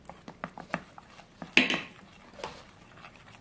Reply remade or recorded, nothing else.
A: recorded